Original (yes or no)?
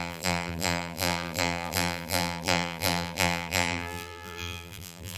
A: no